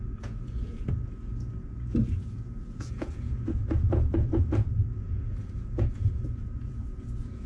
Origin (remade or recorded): remade